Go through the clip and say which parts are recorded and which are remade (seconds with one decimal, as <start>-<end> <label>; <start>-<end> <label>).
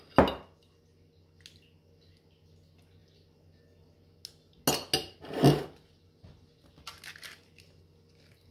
0.0-8.5 recorded